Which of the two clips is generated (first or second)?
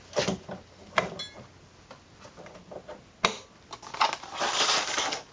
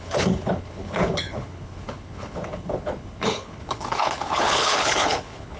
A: second